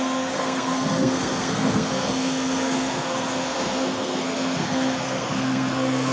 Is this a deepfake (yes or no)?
yes